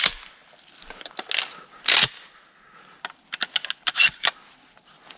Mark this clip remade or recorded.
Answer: recorded